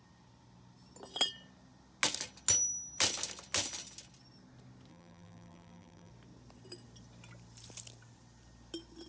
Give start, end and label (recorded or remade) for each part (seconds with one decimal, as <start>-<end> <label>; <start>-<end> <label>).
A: 0.0-4.9 recorded; 4.9-6.1 remade; 6.1-9.1 recorded